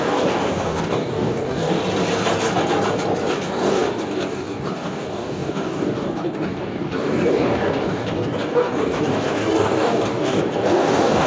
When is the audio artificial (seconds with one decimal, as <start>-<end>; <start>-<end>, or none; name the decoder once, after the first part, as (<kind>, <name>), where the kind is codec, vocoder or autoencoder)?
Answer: 0.0-1.8 (codec, DAC); 3.3-11.3